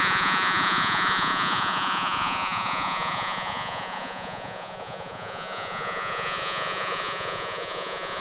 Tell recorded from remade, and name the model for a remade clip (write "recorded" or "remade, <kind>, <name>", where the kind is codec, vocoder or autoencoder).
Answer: remade, vocoder, Vocos